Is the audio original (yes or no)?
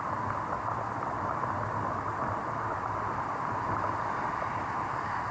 no